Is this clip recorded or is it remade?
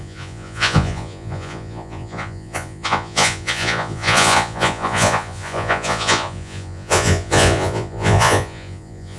remade